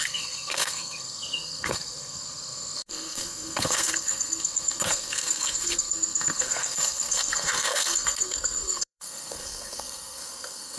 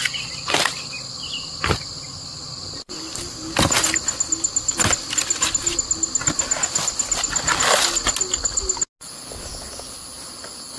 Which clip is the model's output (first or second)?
first